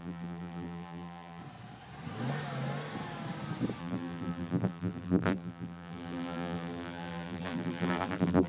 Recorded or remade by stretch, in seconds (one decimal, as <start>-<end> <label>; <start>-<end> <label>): 0.0-1.4 remade; 1.4-3.8 recorded; 3.8-8.5 remade